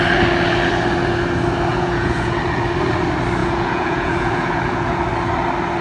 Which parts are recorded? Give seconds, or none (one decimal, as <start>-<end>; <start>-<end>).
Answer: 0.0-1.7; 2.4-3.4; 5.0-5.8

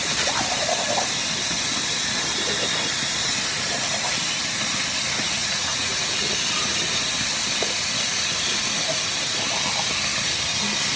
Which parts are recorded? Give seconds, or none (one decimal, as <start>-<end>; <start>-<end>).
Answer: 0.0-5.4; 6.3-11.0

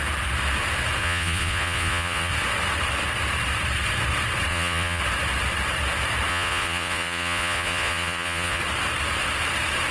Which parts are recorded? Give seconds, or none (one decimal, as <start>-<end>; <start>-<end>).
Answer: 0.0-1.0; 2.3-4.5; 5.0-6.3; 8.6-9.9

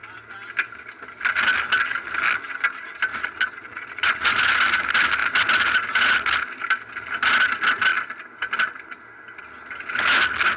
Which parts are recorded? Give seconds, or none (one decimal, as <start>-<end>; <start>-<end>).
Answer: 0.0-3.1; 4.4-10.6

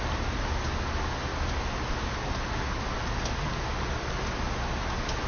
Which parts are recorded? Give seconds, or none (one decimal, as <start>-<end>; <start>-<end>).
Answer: 0.0-5.3

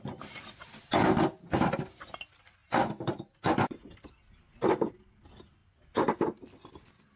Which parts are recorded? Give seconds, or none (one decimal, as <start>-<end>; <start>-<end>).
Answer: 0.0-7.2

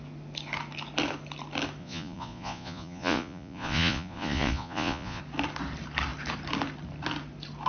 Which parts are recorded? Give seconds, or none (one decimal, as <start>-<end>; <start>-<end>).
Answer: 0.0-1.8; 5.2-7.7